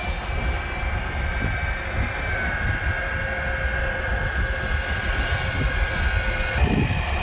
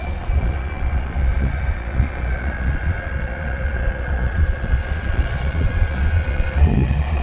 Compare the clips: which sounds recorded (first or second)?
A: first